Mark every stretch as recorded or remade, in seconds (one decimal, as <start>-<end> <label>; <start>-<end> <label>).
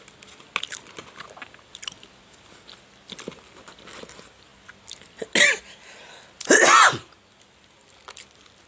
0.0-8.7 recorded